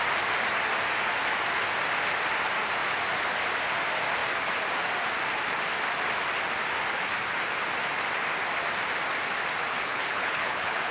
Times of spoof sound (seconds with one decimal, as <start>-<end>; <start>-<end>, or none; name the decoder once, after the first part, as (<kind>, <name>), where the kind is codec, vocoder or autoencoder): 9.7-10.9 (codec, HILCodec)